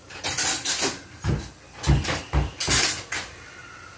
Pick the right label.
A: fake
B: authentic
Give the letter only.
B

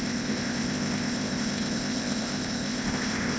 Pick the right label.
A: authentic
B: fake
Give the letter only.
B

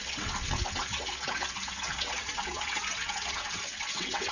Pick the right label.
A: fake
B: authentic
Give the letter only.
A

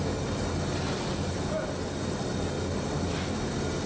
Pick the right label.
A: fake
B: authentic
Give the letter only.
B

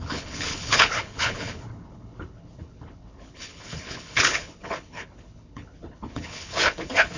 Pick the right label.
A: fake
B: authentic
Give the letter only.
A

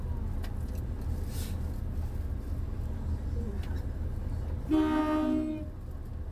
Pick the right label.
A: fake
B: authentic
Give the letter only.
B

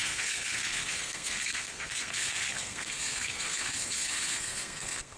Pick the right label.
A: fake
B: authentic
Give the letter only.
A